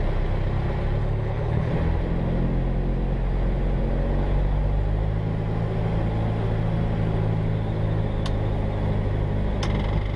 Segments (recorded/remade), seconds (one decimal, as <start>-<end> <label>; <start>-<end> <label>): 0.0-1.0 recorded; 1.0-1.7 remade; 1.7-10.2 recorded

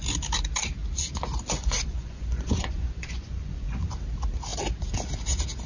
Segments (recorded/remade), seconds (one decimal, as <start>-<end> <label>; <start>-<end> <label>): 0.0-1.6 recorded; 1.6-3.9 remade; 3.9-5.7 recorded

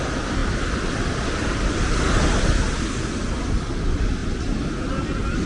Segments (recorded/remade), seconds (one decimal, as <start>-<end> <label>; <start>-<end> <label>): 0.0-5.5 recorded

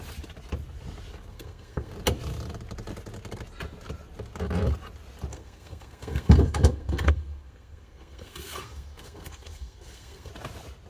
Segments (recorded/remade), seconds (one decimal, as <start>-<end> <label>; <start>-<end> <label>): 0.0-1.3 recorded; 1.3-1.9 remade; 1.9-5.3 recorded; 5.3-10.3 remade; 10.3-10.9 recorded

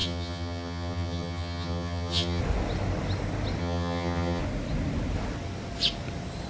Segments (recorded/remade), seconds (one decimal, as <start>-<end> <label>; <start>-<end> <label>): 0.0-2.4 remade; 2.4-3.6 recorded; 3.6-4.4 remade; 4.4-6.5 recorded

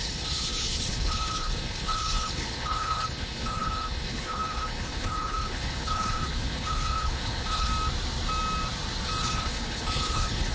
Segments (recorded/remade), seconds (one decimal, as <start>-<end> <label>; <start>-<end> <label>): 0.0-7.7 remade; 7.7-9.2 recorded; 9.2-10.5 remade

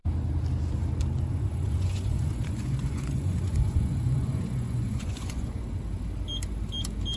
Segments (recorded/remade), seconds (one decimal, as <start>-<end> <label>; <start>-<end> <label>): 0.0-1.3 recorded; 1.3-5.6 remade; 5.6-7.2 recorded

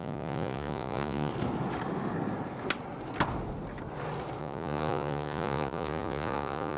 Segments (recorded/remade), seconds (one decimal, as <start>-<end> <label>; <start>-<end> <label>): 0.0-1.3 remade; 1.3-4.4 recorded; 4.4-6.8 remade